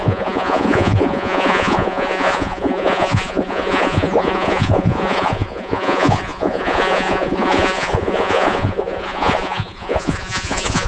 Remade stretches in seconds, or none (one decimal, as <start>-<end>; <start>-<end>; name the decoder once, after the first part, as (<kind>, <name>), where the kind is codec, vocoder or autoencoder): 0.0-10.9 (vocoder, Vocos)